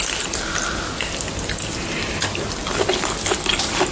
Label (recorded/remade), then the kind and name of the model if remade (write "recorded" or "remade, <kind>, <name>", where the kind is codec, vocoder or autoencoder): recorded